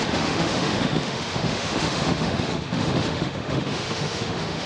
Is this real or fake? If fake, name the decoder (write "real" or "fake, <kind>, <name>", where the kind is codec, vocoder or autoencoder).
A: fake, autoencoder, DAC-VAE